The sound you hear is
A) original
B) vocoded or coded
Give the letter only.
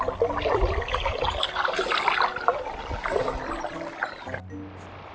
A